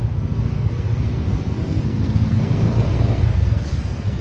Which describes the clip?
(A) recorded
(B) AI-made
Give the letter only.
B